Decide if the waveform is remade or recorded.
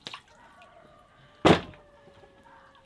recorded